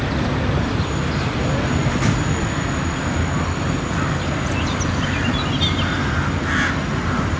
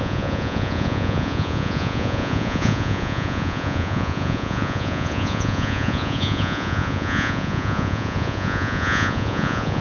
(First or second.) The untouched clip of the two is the first